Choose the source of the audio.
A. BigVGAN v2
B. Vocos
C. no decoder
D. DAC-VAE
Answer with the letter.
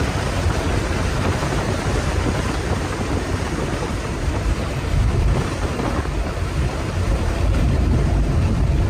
A